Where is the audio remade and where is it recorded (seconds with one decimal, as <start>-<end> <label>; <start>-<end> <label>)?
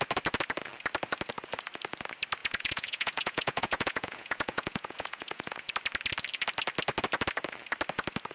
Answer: 0.0-2.4 recorded; 2.4-5.7 remade; 5.7-8.3 recorded